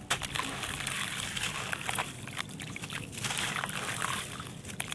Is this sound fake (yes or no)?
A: no